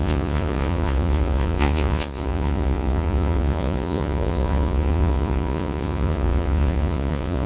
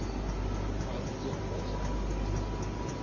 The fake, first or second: first